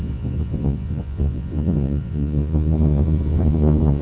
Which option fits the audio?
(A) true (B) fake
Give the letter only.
B